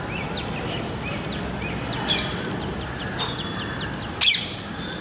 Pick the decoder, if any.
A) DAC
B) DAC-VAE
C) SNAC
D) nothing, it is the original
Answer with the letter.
D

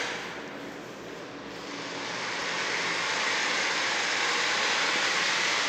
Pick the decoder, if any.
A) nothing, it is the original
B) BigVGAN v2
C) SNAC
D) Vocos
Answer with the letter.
A